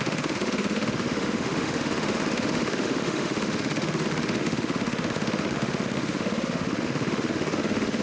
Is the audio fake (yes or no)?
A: yes